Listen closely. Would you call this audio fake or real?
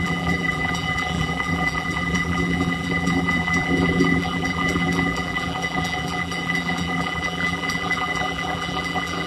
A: fake